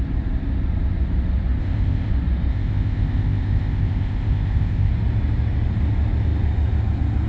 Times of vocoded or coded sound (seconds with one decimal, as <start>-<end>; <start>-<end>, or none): 1.6-2.1; 2.5-4.9